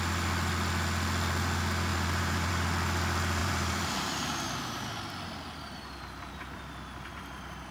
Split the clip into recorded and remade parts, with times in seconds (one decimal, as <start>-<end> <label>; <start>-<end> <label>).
0.0-1.9 recorded; 1.9-2.5 remade; 2.5-3.4 recorded; 3.4-5.0 remade; 5.0-7.7 recorded